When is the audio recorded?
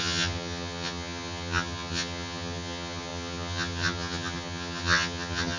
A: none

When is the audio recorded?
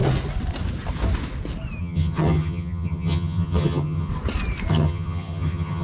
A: 0.0-1.8; 4.1-4.7